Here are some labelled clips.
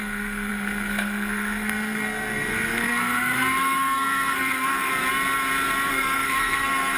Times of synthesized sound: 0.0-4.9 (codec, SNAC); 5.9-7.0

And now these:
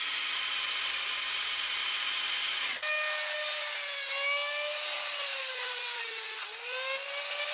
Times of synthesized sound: 1.8-2.6 (vocoder, BigVGAN v2); 5.3-6.0

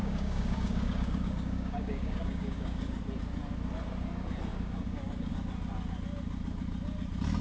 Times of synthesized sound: 0.0-3.0 (codec, DAC); 4.5-5.3

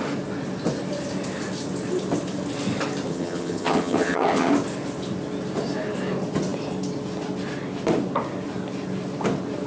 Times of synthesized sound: 3.1-4.5 (vocoder, HiFi-GAN)